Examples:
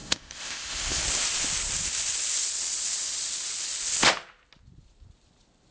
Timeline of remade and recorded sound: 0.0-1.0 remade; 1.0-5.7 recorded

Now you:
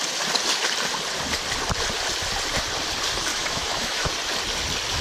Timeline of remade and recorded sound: 0.0-3.3 recorded; 3.3-4.1 remade; 4.1-5.0 recorded

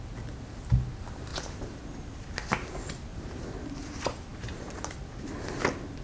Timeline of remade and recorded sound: 0.0-1.3 recorded; 1.3-2.1 remade; 2.1-3.1 recorded; 3.1-3.7 remade; 3.7-4.3 recorded; 4.3-5.0 remade; 5.0-6.0 recorded

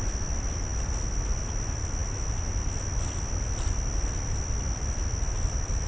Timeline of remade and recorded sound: 0.0-5.9 recorded

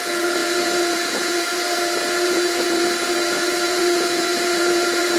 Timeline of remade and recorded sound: 0.0-5.2 remade